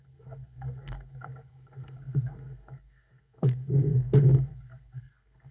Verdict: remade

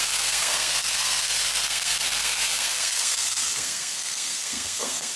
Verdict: remade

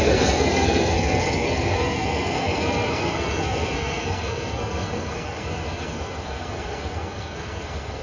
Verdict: remade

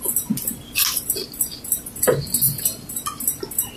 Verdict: recorded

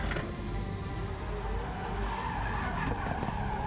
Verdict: recorded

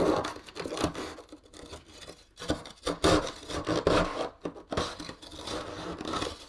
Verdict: recorded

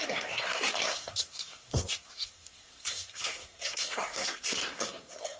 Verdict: remade